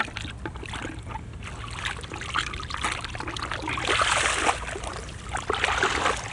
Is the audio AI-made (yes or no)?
no